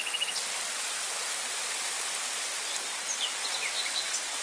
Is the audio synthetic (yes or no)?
no